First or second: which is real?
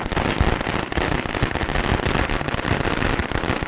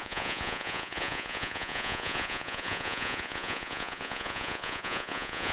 first